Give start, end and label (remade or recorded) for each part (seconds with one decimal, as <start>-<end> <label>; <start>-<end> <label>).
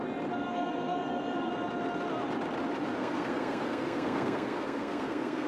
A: 0.0-0.4 recorded; 0.4-1.5 remade; 1.5-3.0 recorded; 3.0-5.5 remade